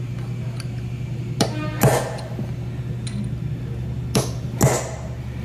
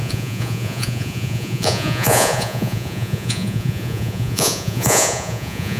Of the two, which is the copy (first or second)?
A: second